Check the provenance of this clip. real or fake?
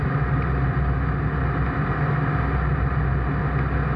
real